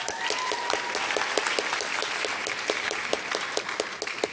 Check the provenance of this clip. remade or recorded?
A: recorded